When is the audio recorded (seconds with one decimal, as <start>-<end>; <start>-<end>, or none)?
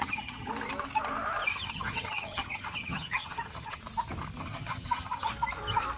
0.5-1.5; 3.8-4.4; 5.3-6.0